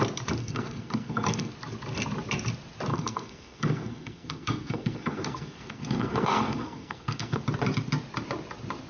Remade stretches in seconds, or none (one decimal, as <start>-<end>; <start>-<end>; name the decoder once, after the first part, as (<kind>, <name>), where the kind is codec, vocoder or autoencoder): 0.4-1.5 (codec, SNAC); 2.9-7.4